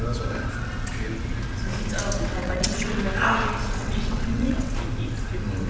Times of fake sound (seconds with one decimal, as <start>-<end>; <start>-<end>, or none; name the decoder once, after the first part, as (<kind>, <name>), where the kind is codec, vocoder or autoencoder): 2.3-3.0 (vocoder, WaveNeXt); 3.8-4.7